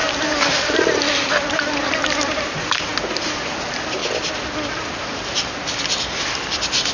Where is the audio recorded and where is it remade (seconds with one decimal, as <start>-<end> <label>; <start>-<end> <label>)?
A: 0.0-2.4 remade; 2.4-2.9 recorded; 2.9-3.5 remade; 3.5-4.0 recorded; 4.0-5.1 remade; 5.1-6.9 recorded

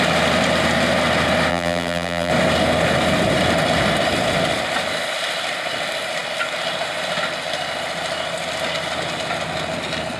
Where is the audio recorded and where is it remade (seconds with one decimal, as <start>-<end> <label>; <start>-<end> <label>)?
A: 0.0-1.5 recorded; 1.5-2.3 remade; 2.3-10.2 recorded